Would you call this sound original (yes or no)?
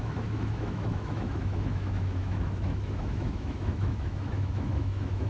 no